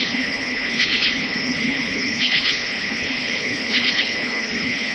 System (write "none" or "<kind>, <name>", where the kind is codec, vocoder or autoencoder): codec, HILCodec